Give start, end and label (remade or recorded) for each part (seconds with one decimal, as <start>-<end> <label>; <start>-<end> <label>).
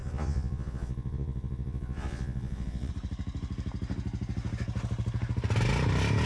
0.0-2.9 remade; 2.9-6.3 recorded